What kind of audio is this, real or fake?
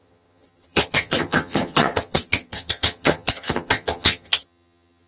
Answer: fake